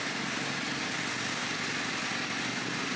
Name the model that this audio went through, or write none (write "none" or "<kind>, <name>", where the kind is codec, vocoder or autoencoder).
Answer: none